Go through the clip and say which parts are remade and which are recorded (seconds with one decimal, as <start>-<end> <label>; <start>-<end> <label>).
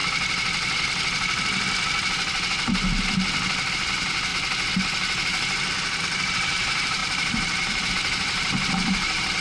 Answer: 0.0-3.7 recorded; 3.7-4.3 remade; 4.3-6.0 recorded; 6.0-9.4 remade